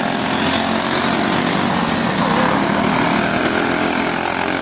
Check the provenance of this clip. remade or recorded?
recorded